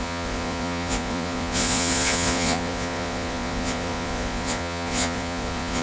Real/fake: fake